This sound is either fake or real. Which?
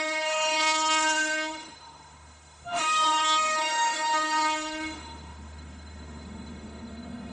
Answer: fake